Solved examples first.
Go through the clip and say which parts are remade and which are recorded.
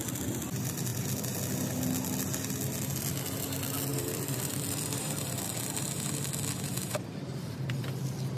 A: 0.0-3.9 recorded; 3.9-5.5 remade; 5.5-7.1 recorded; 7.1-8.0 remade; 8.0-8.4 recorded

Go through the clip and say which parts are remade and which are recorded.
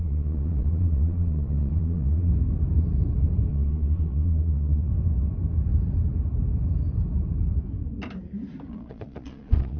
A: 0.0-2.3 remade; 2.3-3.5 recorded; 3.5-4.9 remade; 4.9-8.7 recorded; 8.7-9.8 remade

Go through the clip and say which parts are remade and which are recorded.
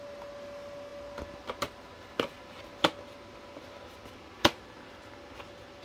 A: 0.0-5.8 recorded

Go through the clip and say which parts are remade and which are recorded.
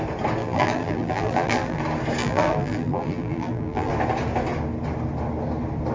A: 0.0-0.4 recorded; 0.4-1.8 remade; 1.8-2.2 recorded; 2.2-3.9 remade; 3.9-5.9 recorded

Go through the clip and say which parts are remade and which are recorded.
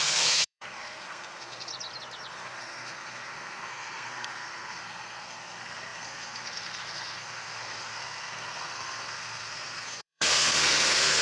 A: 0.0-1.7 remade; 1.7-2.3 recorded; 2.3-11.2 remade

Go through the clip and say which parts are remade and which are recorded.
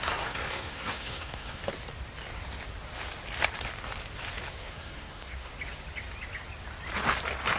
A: 0.0-1.6 remade; 1.6-4.5 recorded; 4.5-5.5 remade; 5.5-7.6 recorded